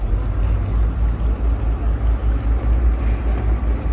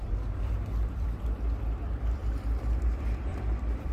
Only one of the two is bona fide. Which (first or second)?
first